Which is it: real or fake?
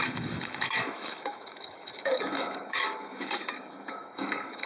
fake